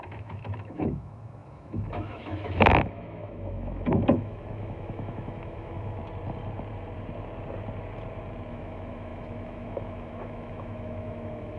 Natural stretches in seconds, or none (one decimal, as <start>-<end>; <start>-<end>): 6.0-8.5